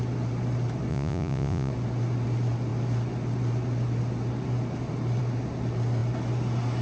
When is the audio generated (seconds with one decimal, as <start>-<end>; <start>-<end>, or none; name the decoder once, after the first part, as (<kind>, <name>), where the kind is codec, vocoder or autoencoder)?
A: 0.9-1.7 (vocoder, Vocos)